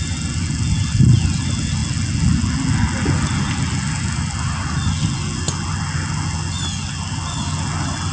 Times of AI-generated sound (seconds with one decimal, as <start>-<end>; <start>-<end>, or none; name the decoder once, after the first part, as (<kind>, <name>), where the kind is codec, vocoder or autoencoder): none